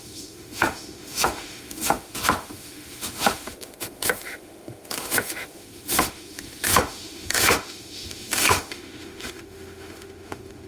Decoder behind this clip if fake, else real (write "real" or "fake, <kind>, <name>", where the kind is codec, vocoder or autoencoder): fake, autoencoder, DAC-VAE